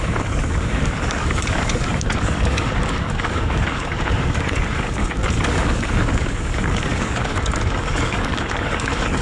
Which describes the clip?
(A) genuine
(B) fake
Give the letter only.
B